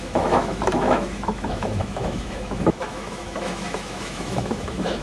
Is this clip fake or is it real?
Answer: fake